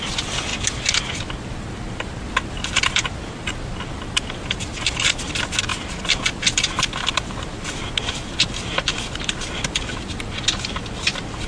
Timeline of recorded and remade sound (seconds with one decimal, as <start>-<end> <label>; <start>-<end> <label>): 0.0-11.5 recorded